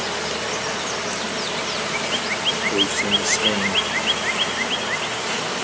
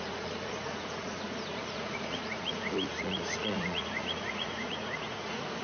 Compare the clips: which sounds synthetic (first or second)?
second